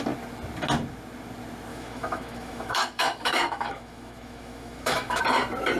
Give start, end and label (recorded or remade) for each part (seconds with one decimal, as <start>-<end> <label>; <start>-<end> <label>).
0.0-1.7 recorded; 1.7-5.2 remade; 5.2-5.8 recorded